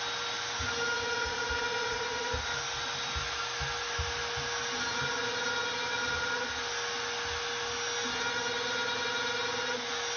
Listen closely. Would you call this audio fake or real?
real